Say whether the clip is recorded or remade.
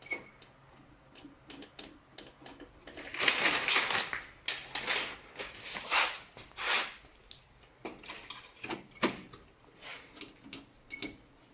recorded